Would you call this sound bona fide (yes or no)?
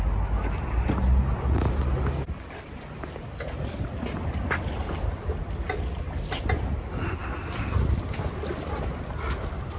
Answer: yes